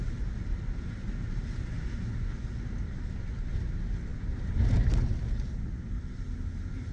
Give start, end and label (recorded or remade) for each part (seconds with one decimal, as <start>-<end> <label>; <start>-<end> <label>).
0.0-6.9 recorded